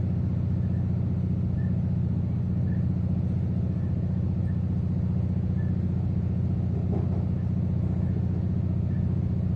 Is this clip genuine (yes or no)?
yes